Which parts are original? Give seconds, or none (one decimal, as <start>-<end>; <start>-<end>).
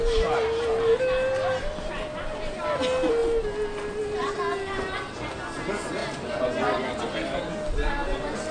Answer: 0.0-8.5